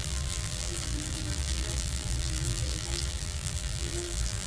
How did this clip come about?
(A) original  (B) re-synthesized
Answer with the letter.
B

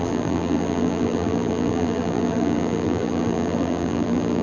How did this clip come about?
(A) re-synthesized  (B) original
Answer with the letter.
A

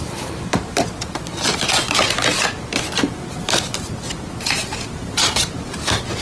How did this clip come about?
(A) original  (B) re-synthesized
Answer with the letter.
A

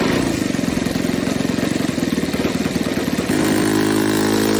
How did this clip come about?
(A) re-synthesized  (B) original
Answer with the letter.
B